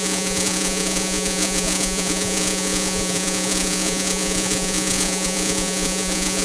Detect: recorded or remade remade